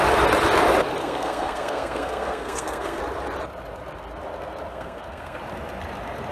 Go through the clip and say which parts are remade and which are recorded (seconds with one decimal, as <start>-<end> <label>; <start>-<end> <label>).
0.0-1.0 recorded; 1.0-3.0 remade; 3.0-4.7 recorded; 4.7-5.4 remade; 5.4-6.3 recorded